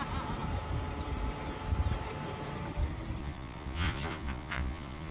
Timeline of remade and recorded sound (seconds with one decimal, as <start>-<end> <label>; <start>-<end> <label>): 0.0-3.2 recorded; 3.2-5.1 remade